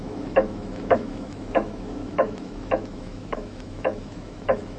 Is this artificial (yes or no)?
yes